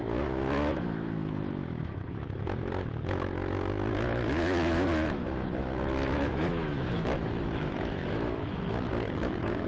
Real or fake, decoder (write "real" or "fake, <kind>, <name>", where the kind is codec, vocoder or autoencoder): fake, autoencoder, DAC-VAE